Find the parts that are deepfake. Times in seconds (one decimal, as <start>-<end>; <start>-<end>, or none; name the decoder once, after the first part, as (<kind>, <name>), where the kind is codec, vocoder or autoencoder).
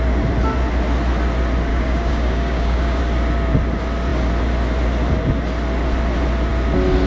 1.7-3.0 (codec, DAC)